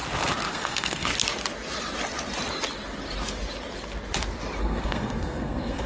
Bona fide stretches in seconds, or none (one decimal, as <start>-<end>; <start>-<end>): 0.0-0.5; 1.1-4.6